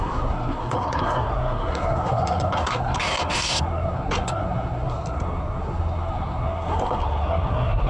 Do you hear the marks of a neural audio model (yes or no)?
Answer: yes